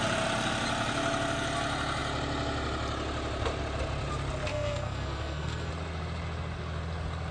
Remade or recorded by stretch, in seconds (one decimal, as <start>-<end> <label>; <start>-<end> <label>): 0.0-4.5 recorded; 4.5-5.7 remade; 5.7-7.3 recorded